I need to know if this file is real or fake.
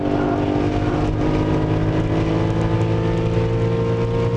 real